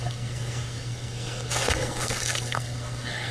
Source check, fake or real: fake